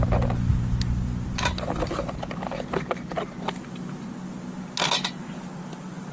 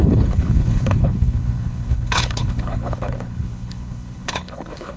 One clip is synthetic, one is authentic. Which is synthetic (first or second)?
second